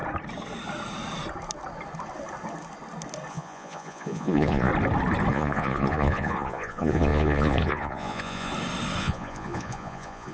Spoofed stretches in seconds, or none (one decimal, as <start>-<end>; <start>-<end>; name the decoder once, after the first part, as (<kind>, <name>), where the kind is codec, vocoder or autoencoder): 3.3-4.7 (vocoder, Vocos); 5.3-8.5; 9.0-10.3